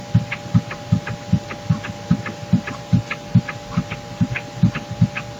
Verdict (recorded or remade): recorded